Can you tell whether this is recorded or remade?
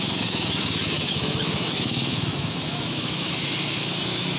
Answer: remade